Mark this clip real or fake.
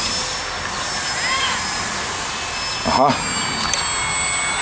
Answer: real